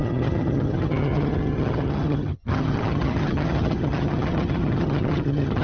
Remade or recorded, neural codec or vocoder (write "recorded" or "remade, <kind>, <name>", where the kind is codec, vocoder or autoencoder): remade, vocoder, HiFi-GAN